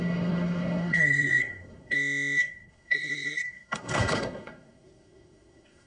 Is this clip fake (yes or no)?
yes